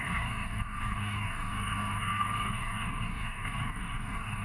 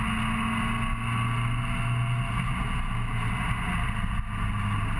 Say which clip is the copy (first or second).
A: first